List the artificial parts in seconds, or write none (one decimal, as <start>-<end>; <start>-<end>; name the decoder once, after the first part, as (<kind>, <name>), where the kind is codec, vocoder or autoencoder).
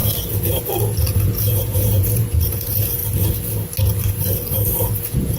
1.1-3.0 (vocoder, Vocos); 5.0-5.4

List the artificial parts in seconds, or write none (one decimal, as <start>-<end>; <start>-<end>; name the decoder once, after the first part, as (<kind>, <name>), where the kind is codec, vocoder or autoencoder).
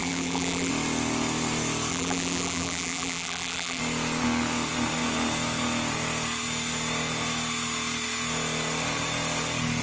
0.0-0.7 (vocoder, BigVGAN v2); 1.9-3.8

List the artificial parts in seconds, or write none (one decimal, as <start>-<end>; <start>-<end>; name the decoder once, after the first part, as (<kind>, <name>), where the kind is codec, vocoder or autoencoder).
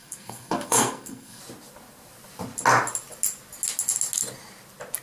0.0-1.4 (codec, SNAC)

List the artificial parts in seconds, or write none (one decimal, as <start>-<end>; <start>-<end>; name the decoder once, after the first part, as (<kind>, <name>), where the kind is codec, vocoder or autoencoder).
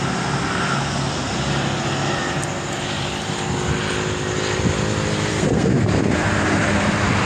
5.3-5.9 (codec, SNAC)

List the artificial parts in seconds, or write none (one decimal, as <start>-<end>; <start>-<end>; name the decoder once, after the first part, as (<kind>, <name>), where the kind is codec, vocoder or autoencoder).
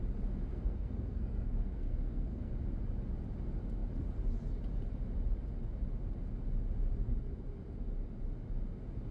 0.5-2.5 (codec, SNAC)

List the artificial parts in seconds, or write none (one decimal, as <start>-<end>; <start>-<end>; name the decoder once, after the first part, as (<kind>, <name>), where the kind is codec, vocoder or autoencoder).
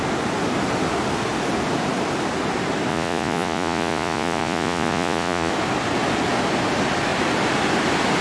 2.9-5.5 (vocoder, Vocos)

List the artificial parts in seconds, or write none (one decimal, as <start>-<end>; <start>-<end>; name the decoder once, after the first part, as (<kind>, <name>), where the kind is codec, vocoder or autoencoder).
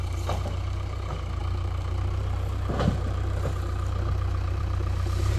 0.0-5.4 (vocoder, BigVGAN v2)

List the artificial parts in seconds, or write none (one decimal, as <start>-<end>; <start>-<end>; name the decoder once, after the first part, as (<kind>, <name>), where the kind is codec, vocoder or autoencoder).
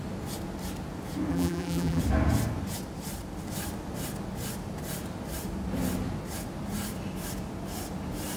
1.3-2.0 (vocoder, BigVGAN v2)